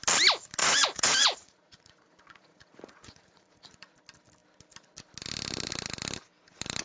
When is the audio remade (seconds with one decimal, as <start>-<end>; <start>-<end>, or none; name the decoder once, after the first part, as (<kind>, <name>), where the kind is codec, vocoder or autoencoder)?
0.6-4.0 (vocoder, Vocos)